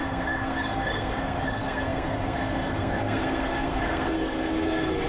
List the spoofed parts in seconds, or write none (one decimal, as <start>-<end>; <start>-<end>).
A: 0.0-5.1